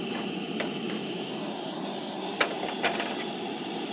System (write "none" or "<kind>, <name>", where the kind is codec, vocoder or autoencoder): none